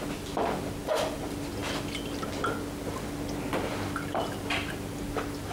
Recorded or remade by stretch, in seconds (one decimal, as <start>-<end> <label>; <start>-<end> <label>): 0.0-5.5 recorded